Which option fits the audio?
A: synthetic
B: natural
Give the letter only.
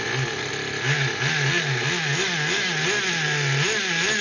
B